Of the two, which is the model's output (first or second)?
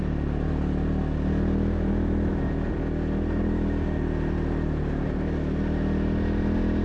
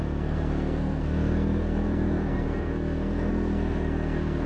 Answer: second